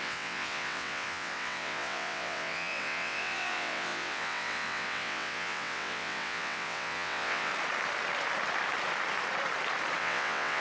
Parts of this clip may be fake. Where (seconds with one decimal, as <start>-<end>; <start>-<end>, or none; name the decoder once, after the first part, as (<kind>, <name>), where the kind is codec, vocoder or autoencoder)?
0.0-7.5 (vocoder, WaveNeXt); 10.0-10.6